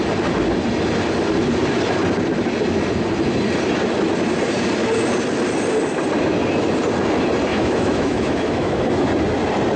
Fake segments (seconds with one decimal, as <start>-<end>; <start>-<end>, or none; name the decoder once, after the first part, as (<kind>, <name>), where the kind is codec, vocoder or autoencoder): 7.5-9.1 (autoencoder, DAC-VAE)